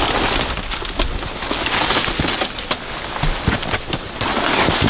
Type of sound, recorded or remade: recorded